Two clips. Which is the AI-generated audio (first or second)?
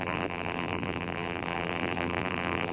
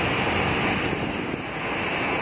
first